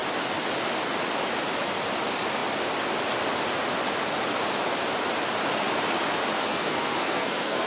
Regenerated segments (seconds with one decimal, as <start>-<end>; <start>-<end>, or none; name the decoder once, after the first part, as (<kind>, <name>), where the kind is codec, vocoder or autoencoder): 6.5-7.7 (codec, SNAC)